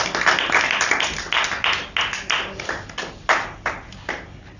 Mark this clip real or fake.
real